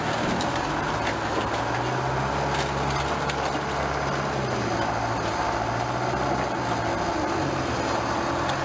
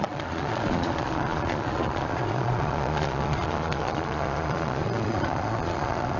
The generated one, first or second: second